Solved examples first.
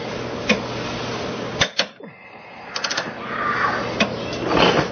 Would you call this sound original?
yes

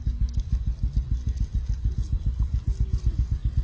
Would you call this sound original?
yes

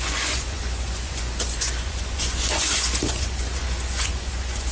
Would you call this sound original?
no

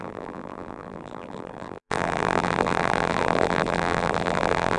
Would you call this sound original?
no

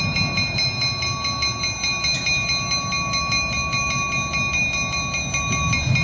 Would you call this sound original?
yes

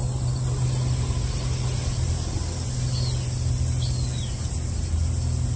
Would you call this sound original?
yes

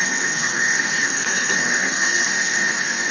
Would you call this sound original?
no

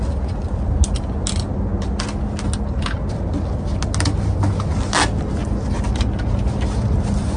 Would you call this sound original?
yes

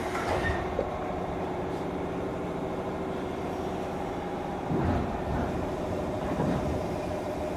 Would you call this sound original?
no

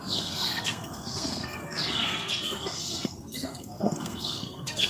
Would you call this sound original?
no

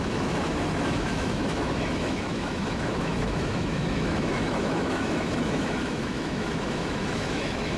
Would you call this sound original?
no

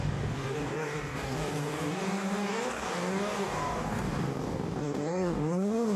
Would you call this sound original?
no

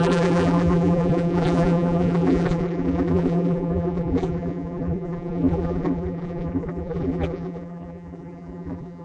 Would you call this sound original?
no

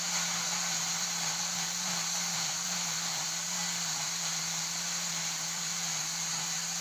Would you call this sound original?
no